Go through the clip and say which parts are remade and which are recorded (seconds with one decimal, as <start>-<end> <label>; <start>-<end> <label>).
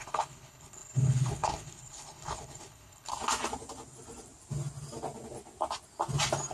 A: 0.0-3.1 remade; 3.1-6.5 recorded